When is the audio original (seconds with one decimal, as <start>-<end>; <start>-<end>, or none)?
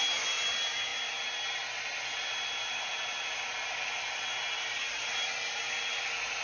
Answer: 0.0-6.4